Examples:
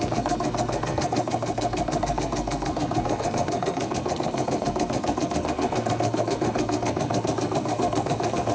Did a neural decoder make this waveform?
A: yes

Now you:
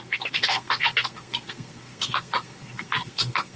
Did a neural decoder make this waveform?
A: yes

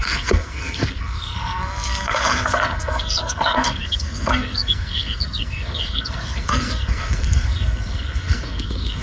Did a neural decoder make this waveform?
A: yes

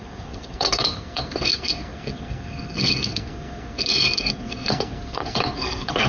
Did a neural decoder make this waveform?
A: yes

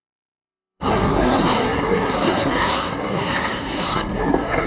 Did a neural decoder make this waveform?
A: yes